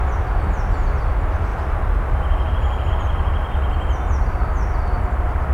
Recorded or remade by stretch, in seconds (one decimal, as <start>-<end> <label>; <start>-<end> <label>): 0.0-5.5 recorded